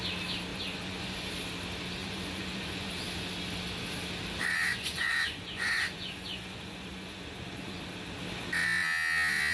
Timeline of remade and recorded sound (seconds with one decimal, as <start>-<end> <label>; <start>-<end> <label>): 0.0-0.5 recorded; 0.5-1.3 remade; 1.3-2.0 recorded; 2.0-2.9 remade; 2.9-4.7 recorded; 4.7-7.8 remade; 7.8-9.5 recorded